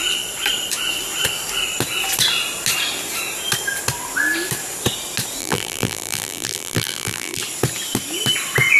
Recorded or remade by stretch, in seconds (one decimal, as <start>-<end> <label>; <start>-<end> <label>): 0.0-5.4 recorded; 5.4-7.4 remade; 7.4-8.8 recorded